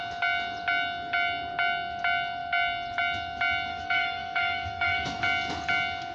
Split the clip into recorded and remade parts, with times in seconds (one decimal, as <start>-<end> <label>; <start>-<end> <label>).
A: 0.0-3.7 recorded; 3.7-5.2 remade; 5.2-6.1 recorded